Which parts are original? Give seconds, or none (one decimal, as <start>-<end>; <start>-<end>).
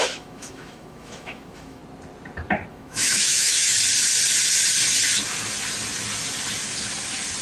1.8-2.7; 3.7-7.4